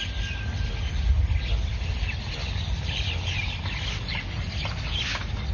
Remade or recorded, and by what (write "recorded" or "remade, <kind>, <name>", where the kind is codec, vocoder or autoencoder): recorded